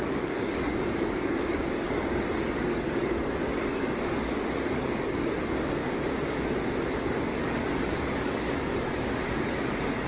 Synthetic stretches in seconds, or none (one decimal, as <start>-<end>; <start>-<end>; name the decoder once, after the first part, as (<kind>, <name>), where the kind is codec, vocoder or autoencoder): 0.0-5.8 (codec, DAC); 7.0-10.1